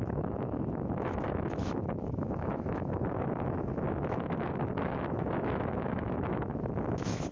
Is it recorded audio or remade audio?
remade